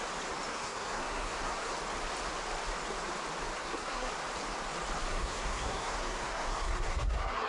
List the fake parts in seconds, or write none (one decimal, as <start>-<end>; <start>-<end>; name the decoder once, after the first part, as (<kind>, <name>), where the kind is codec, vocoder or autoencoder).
0.5-1.7 (codec, SNAC); 3.6-4.1; 5.1-7.5